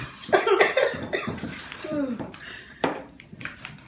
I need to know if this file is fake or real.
fake